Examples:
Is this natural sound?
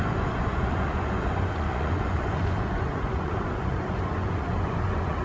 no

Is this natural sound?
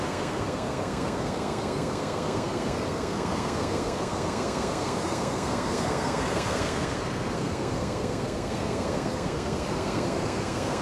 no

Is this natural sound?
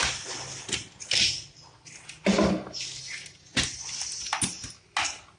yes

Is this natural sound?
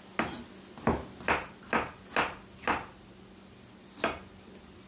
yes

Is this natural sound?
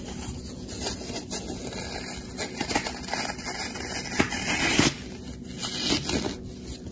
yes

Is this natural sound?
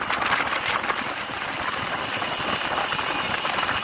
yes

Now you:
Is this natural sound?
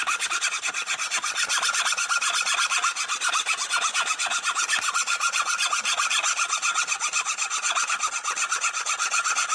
yes